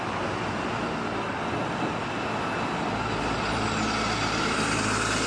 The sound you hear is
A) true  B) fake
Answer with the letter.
A